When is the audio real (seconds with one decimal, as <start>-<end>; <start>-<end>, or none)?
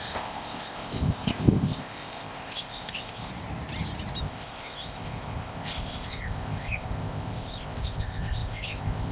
3.3-4.2